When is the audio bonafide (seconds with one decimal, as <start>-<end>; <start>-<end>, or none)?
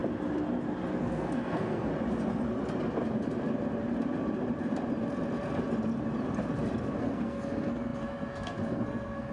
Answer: 0.0-0.9; 1.9-7.0